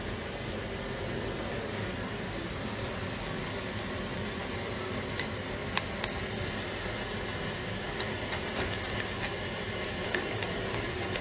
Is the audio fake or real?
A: real